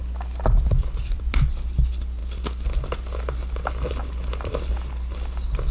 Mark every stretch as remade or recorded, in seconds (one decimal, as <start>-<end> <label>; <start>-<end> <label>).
0.0-0.8 recorded; 0.8-1.5 remade; 1.5-5.7 recorded